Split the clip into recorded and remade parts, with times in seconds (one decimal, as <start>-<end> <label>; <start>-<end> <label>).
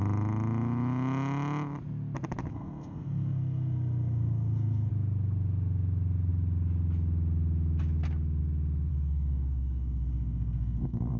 0.0-2.5 recorded; 2.5-4.9 remade; 4.9-8.9 recorded; 8.9-11.2 remade